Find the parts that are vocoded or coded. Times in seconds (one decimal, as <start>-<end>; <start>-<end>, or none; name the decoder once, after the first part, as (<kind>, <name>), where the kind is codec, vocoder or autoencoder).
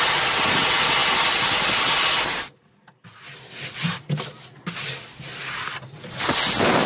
none